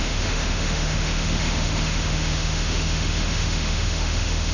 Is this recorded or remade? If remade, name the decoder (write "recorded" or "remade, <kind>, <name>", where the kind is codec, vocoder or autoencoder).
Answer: remade, autoencoder, DAC-VAE